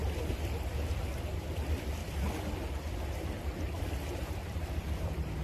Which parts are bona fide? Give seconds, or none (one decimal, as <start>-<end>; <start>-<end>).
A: 2.0-4.4